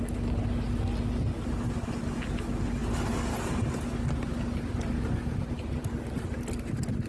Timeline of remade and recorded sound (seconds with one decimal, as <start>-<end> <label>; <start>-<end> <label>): 0.0-7.1 recorded